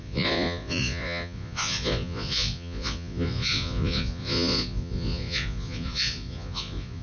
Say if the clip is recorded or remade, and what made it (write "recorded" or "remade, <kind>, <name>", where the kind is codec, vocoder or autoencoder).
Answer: remade, vocoder, Vocos